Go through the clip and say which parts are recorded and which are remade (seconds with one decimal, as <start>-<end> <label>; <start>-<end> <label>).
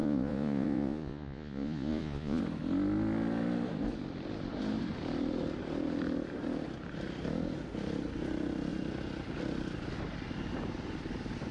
0.0-2.4 remade; 2.4-11.5 recorded